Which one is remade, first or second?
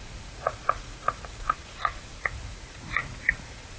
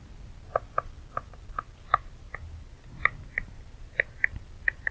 first